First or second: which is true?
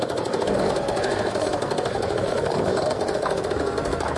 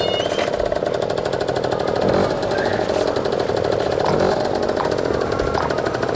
second